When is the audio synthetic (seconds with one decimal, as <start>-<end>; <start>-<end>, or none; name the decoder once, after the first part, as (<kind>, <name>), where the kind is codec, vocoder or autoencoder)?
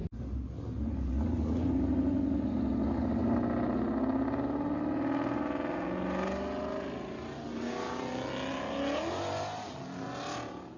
none